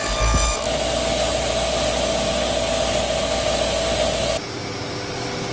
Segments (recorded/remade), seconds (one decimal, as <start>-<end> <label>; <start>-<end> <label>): 0.0-5.5 recorded